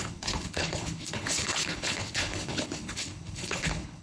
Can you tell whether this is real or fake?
fake